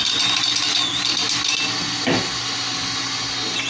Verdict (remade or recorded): recorded